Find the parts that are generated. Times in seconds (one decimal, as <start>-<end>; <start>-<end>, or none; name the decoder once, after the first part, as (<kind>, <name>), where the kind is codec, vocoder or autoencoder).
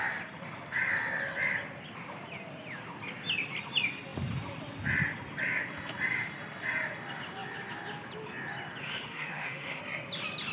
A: 8.8-9.8 (autoencoder, DAC-VAE)